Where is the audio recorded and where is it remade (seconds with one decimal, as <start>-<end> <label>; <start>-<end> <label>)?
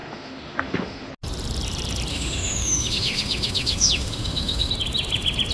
0.0-1.1 remade; 1.1-2.1 recorded; 2.1-4.7 remade; 4.7-5.5 recorded